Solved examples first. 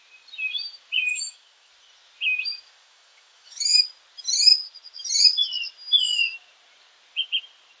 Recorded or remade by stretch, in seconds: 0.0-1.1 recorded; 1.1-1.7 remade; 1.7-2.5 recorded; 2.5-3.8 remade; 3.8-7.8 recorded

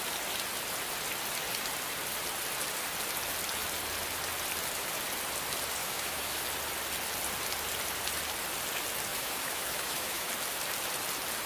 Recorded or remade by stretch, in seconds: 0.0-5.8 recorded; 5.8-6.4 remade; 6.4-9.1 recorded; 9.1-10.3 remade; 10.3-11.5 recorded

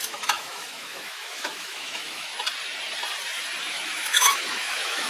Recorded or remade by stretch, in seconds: 0.0-2.3 remade; 2.3-3.7 recorded; 3.7-5.1 remade